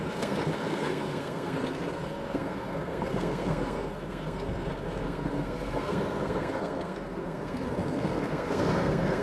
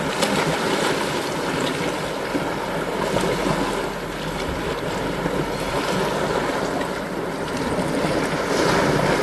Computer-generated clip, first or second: first